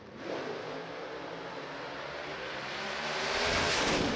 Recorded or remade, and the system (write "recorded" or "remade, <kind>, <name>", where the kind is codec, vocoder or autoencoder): remade, vocoder, BigVGAN v2